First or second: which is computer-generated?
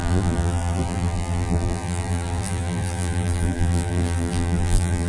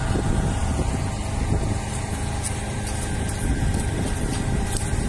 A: first